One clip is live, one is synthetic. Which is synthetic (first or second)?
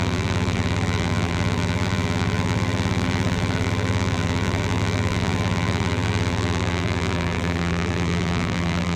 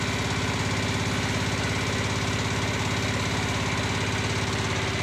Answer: first